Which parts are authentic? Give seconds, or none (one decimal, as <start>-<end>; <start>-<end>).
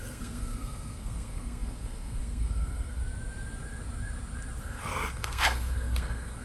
3.0-4.6